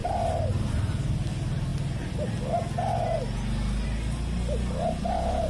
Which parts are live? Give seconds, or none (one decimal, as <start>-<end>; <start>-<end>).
0.0-5.5